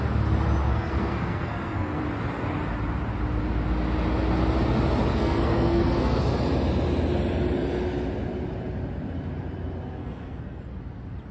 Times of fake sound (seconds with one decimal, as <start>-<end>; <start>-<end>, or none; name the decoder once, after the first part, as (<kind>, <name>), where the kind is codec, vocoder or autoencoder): 0.7-2.0 (codec, SNAC); 5.1-6.2; 10.0-10.6